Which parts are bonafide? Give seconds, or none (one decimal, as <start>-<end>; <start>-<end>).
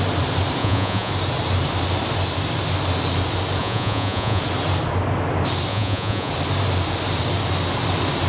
0.0-0.6; 1.1-3.6; 4.4-5.7; 6.3-8.3